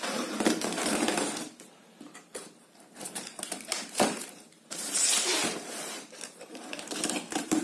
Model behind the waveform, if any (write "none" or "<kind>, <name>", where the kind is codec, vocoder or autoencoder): vocoder, BigVGAN v2